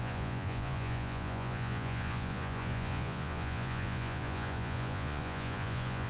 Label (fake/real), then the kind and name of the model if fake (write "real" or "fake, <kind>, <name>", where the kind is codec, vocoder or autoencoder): fake, vocoder, Vocos